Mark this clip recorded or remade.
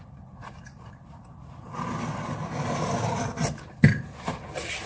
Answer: recorded